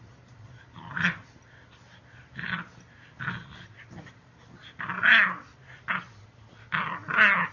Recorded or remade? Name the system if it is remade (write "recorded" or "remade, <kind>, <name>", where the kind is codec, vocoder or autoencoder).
recorded